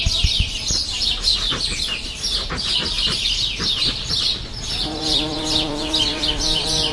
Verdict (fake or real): fake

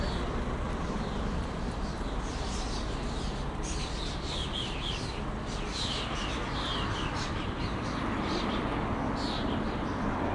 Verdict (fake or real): fake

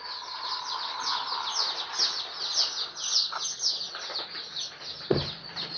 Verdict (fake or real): real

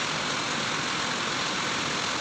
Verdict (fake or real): real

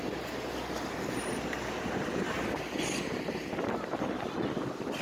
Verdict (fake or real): real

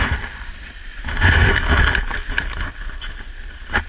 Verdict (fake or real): real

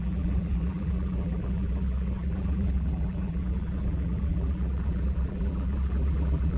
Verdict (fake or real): fake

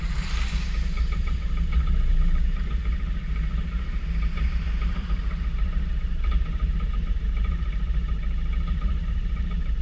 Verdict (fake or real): fake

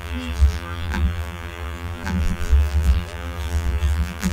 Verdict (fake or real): fake